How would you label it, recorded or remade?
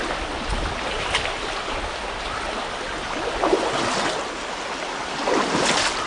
recorded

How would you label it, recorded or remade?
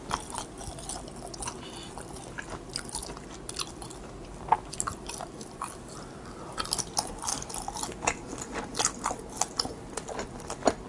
recorded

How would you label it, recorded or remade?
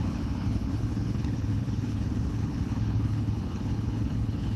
remade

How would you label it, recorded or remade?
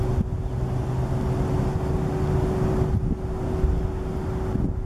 recorded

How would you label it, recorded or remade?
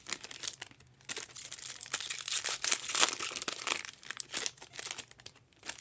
recorded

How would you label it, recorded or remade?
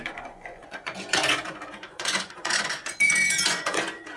remade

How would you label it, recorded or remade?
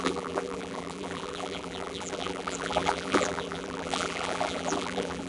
remade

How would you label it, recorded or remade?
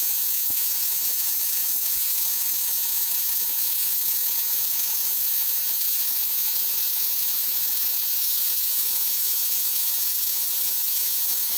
remade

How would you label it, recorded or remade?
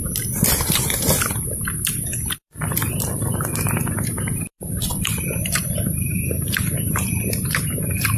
remade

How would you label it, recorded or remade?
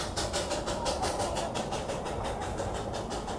recorded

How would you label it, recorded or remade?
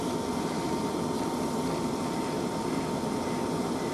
recorded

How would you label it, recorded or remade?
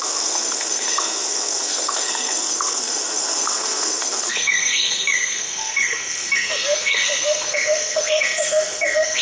remade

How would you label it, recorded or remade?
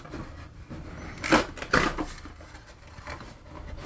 recorded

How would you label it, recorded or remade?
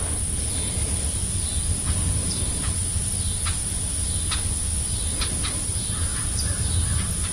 recorded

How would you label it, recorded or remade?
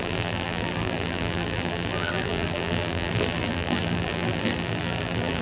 remade